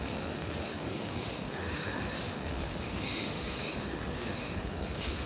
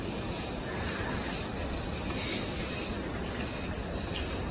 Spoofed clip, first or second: first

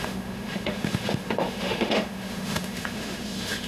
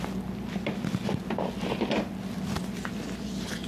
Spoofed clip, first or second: first